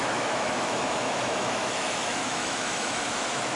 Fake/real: fake